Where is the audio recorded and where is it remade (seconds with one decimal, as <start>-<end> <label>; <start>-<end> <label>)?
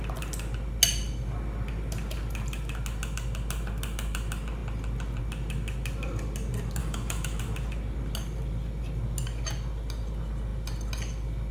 0.0-6.8 recorded; 6.8-7.4 remade; 7.4-11.5 recorded